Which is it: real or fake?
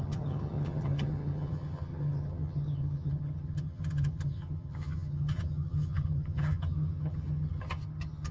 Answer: fake